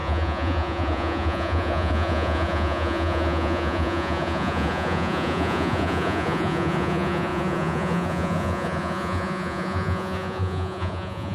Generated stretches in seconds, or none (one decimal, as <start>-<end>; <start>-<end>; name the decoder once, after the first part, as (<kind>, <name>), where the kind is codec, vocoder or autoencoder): 0.0-11.3 (vocoder, Vocos)